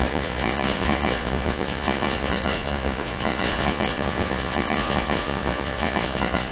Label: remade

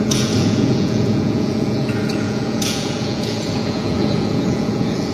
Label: remade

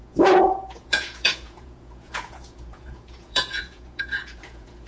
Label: remade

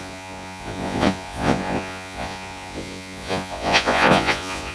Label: remade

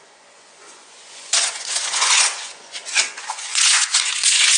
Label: remade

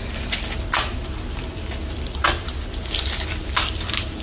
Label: recorded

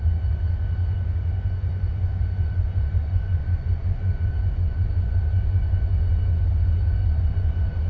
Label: remade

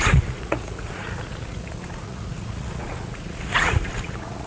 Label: remade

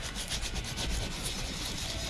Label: remade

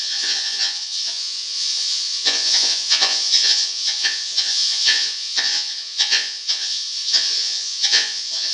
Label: remade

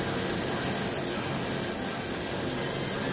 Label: recorded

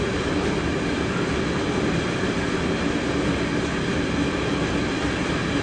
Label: recorded